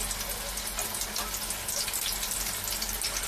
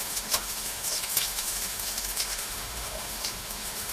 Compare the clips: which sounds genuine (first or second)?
first